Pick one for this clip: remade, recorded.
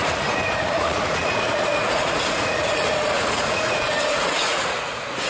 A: remade